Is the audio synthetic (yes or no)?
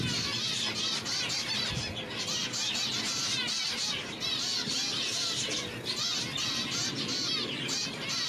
no